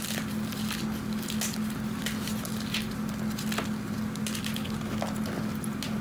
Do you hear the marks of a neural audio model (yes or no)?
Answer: no